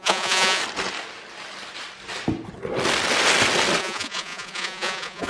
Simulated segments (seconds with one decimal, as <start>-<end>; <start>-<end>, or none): 0.0-0.6; 3.8-5.3